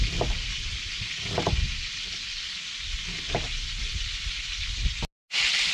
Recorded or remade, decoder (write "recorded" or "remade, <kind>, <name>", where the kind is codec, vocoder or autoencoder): recorded